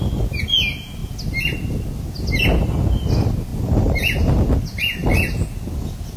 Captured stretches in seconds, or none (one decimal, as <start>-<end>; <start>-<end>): 0.0-3.5; 4.2-6.2